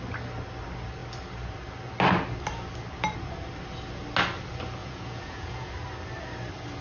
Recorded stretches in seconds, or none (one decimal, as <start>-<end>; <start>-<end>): 0.0-4.8; 5.7-6.8